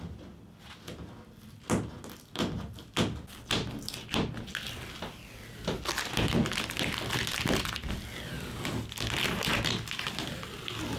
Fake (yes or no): no